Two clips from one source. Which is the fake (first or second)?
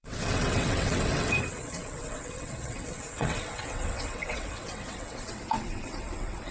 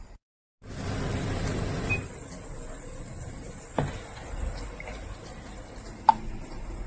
first